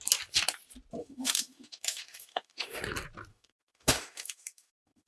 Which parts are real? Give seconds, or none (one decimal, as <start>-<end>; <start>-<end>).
0.0-1.0; 2.8-3.3